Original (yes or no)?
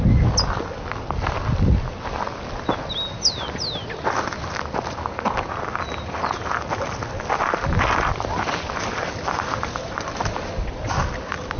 yes